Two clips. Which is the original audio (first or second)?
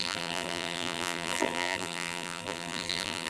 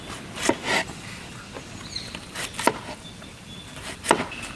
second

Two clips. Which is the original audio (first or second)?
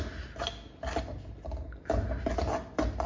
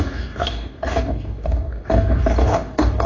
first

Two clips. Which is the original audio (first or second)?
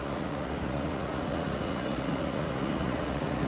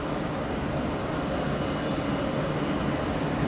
second